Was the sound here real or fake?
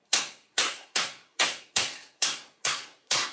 fake